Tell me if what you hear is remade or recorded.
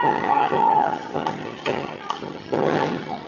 remade